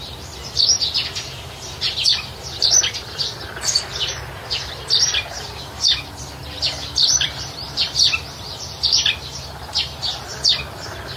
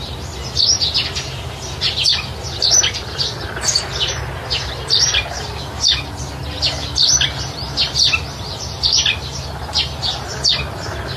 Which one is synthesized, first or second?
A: first